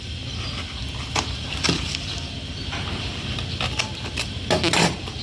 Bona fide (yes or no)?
yes